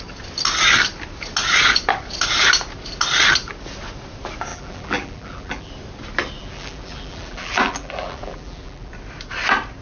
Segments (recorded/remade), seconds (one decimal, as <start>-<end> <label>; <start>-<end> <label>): 0.0-4.5 recorded; 4.5-5.7 remade; 5.7-6.4 recorded; 6.4-8.9 remade; 8.9-9.8 recorded

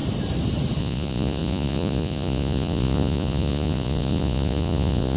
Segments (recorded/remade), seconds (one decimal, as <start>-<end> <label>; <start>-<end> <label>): 0.0-0.8 recorded; 0.8-5.2 remade